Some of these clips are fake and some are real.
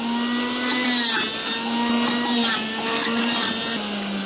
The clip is real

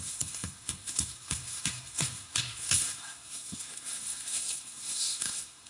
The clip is fake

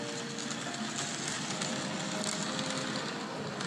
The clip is real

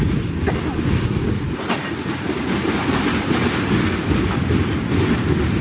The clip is real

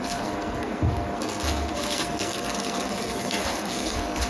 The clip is fake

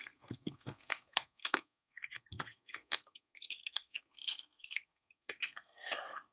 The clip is fake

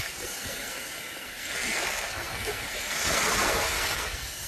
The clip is fake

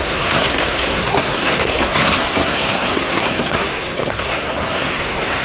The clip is fake